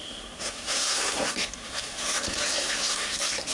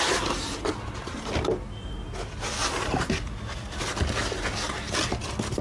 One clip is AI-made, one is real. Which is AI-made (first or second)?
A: first